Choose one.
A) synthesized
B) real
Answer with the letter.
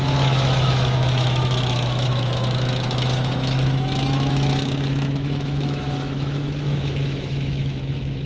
A